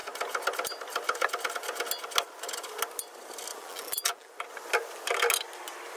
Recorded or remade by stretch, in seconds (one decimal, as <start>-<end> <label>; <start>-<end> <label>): 0.0-3.5 recorded; 3.5-4.3 remade; 4.3-6.0 recorded